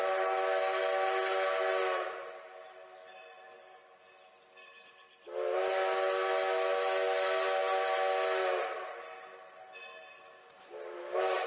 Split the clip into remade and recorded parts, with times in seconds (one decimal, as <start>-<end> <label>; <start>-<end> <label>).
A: 0.0-11.5 recorded